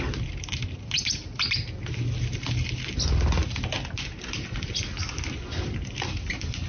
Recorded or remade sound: recorded